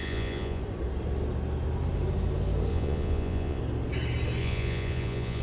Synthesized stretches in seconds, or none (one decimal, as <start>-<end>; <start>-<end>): 0.0-0.6; 2.7-3.6; 4.4-5.4